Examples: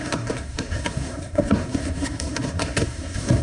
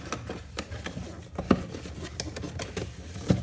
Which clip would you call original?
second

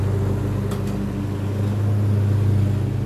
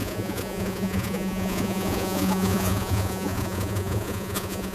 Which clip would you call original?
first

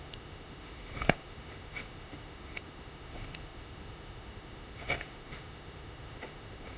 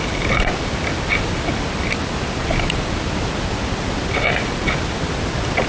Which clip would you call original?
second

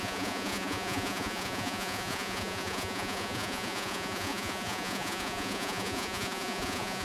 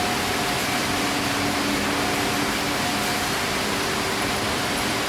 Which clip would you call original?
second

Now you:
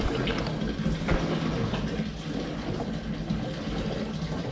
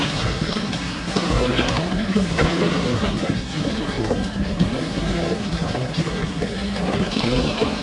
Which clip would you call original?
first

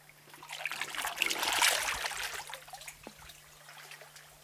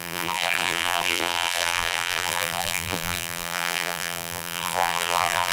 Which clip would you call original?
first